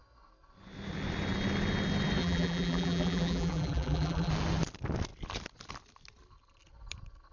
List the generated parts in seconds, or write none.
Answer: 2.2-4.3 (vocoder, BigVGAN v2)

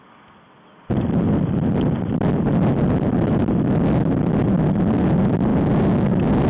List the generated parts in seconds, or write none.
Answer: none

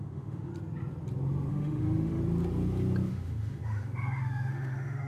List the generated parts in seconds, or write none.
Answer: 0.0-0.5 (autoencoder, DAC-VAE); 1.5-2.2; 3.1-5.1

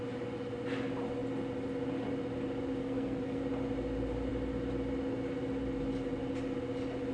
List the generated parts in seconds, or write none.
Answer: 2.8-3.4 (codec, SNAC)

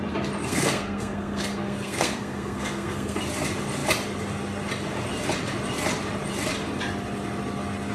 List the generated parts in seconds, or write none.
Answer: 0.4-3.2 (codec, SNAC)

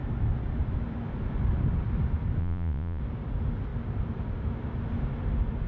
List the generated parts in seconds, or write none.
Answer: 2.4-3.0 (vocoder, Vocos)

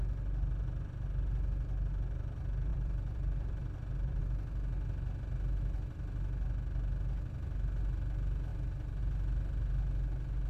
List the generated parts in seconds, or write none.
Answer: 2.7-4.2 (vocoder, BigVGAN v2); 8.5-9.0

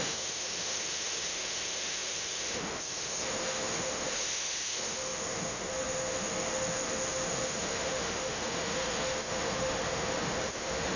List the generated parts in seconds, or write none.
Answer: 0.0-11.0 (autoencoder, DAC-VAE)